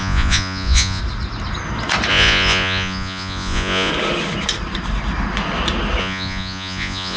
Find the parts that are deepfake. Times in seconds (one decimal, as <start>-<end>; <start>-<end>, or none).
0.0-1.0; 2.1-3.9; 6.0-7.2